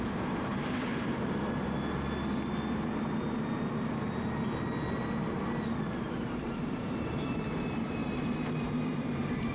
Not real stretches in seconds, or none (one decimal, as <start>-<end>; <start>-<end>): 0.0-0.5; 5.8-9.5